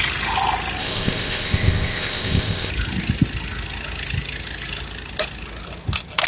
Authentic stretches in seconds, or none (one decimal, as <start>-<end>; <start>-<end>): 0.0-0.8; 2.7-6.3